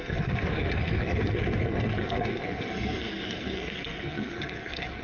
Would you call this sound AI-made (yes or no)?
yes